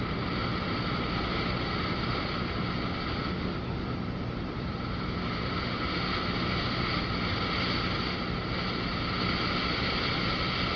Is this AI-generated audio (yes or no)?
no